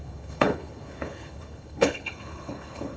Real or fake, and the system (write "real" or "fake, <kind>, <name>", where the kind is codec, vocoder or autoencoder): fake, codec, HILCodec